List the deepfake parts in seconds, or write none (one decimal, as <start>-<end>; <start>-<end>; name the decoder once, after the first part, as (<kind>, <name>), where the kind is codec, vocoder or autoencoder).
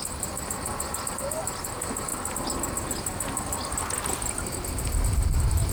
0.0-2.1 (vocoder, BigVGAN v2); 4.7-5.7